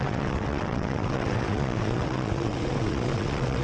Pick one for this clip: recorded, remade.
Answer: remade